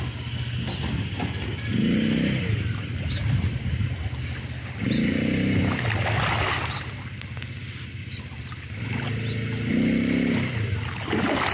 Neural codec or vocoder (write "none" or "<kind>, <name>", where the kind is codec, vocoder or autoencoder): none